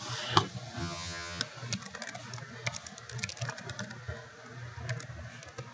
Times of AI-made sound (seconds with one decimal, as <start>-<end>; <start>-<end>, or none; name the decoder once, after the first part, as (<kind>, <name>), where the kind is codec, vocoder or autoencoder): 0.8-1.4 (vocoder, HiFi-GAN)